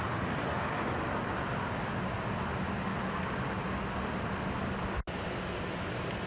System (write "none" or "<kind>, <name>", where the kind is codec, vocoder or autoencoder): none